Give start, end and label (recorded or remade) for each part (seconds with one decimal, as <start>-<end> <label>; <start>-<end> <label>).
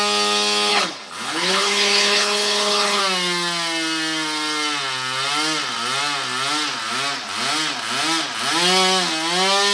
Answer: 0.0-0.7 recorded; 0.7-3.0 remade; 3.0-9.7 recorded